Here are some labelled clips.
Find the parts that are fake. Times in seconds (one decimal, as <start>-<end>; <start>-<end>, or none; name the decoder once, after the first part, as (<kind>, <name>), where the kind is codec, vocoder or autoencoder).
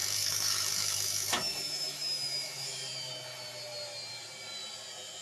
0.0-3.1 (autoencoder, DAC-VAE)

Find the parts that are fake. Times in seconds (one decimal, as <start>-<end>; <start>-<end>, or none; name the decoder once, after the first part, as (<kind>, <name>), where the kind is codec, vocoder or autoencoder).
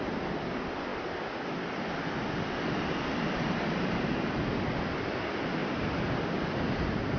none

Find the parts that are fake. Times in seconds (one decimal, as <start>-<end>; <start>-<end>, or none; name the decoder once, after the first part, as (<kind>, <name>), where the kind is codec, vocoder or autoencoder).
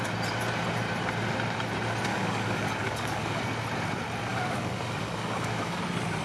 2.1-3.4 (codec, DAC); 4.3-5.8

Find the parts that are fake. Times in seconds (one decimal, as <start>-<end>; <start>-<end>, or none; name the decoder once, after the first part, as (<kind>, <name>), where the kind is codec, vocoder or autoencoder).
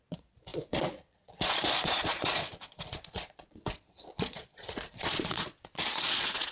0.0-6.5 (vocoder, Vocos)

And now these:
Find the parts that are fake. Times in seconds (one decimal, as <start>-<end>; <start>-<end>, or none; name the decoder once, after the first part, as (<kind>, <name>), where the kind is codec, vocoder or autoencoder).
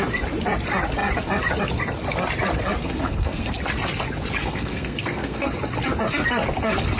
2.8-3.5 (codec, SNAC); 4.4-5.5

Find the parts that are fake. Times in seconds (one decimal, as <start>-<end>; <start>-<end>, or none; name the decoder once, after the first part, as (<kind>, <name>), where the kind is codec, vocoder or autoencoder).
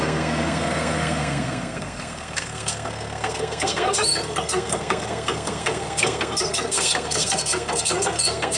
0.0-8.6 (codec, SNAC)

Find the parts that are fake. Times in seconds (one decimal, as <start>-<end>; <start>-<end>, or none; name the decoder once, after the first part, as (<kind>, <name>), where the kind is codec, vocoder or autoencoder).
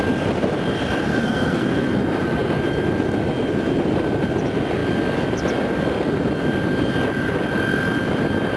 1.1-1.9 (codec, SNAC)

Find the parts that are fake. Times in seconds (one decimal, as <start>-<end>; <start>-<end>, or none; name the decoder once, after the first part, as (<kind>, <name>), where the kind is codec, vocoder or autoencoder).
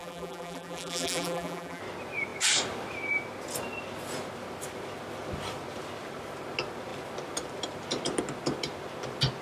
0.0-1.8 (vocoder, BigVGAN v2)